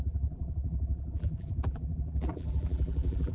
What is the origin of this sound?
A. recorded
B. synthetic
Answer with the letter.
B